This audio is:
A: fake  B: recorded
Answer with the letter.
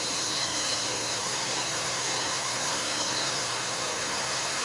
A